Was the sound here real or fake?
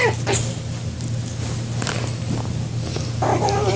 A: real